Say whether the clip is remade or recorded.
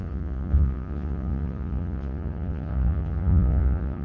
remade